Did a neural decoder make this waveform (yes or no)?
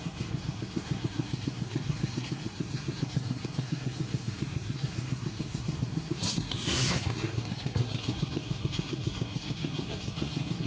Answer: yes